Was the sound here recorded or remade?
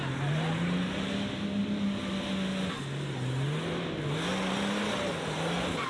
recorded